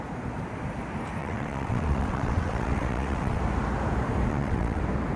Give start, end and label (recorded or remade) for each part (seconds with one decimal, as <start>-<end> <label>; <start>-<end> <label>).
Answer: 0.0-1.2 recorded; 1.2-3.4 remade; 3.4-4.3 recorded; 4.3-4.8 remade; 4.8-5.2 recorded